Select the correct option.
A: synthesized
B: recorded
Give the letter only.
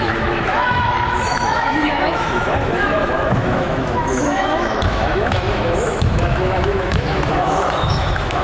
A